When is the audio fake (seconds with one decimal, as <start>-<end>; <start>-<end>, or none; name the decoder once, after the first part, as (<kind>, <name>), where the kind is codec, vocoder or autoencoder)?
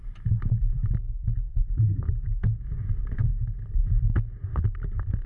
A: 0.0-3.3 (vocoder, BigVGAN v2); 4.7-5.3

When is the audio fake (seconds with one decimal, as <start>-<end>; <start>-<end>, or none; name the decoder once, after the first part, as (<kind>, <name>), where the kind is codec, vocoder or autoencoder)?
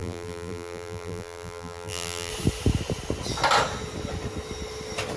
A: 0.0-2.3 (vocoder, BigVGAN v2)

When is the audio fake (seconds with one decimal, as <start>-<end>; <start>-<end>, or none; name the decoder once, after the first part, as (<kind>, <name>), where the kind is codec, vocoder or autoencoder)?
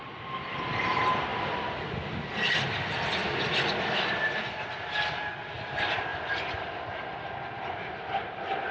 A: 1.3-2.1 (vocoder, BigVGAN v2); 3.2-4.3; 6.1-8.7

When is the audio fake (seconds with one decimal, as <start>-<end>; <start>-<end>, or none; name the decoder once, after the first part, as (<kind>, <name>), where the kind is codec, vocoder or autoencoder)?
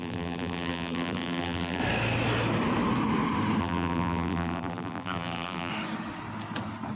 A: 0.0-1.8 (vocoder, BigVGAN v2); 3.6-5.7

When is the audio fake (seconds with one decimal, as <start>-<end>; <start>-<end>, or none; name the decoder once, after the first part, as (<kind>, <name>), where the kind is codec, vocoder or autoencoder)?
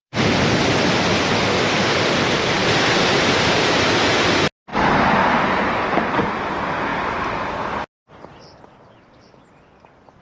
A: 0.0-0.9 (vocoder, BigVGAN v2); 2.6-3.6